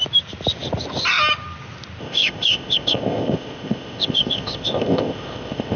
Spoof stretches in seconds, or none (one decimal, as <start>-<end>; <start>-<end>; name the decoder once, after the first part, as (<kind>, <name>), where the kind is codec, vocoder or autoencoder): 2.0-5.8 (codec, ZipCodec)